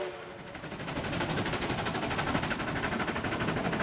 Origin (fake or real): real